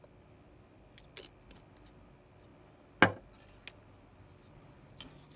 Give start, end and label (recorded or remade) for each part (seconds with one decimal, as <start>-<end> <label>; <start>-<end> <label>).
0.0-5.4 recorded